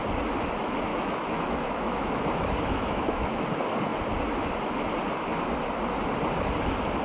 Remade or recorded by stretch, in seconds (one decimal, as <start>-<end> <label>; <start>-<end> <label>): 0.0-0.9 recorded; 0.9-3.5 remade; 3.5-7.0 recorded